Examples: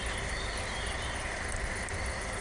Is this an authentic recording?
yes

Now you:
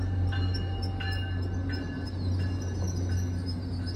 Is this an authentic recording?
yes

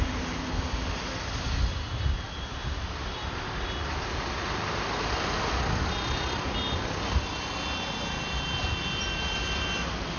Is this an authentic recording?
yes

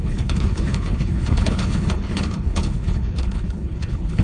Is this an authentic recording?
no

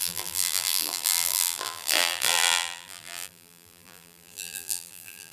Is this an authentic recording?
no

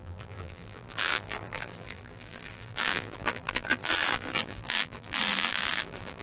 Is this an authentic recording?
no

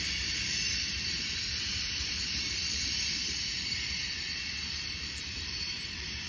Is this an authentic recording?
no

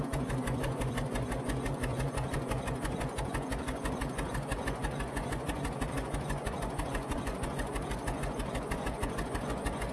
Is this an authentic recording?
no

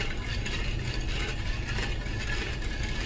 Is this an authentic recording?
yes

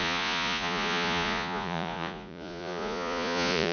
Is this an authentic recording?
no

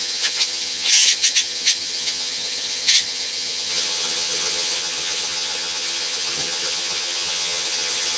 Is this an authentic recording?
no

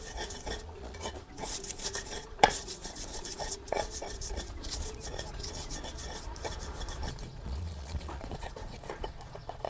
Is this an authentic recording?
no